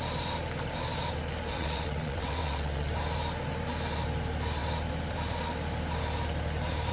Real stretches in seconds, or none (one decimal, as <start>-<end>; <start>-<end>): 0.0-1.5; 2.9-6.9